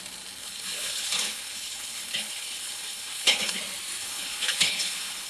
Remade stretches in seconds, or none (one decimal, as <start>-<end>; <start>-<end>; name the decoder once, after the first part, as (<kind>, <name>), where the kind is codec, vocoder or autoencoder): 0.4-3.6 (codec, HILCodec); 4.0-5.3